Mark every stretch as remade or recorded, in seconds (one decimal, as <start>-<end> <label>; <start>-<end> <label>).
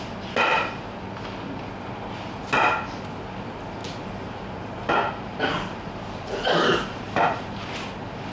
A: 0.0-3.8 recorded; 3.8-7.7 remade; 7.7-8.3 recorded